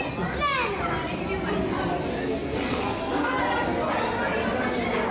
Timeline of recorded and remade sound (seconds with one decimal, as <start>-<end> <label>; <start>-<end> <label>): 0.0-2.2 recorded; 2.2-3.4 remade; 3.4-5.1 recorded